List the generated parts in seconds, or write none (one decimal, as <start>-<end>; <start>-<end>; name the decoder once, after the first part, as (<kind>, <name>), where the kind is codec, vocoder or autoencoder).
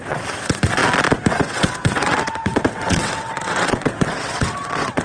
0.0-0.8 (vocoder, WaveNeXt); 1.3-5.0